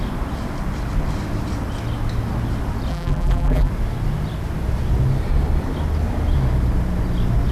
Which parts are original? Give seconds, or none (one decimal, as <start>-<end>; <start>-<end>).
0.0-2.9; 3.7-7.5